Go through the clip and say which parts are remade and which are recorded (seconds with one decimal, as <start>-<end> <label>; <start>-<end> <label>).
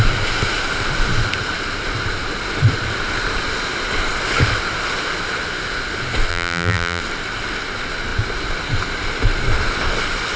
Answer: 0.0-6.3 recorded; 6.3-7.0 remade; 7.0-10.4 recorded